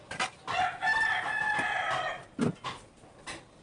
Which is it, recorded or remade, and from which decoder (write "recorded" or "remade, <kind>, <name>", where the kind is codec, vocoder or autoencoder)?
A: recorded